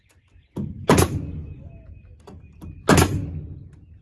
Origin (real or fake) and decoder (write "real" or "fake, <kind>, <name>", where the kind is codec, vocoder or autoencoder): real